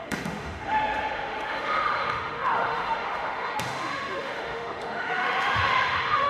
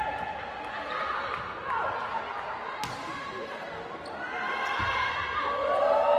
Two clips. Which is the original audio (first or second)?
second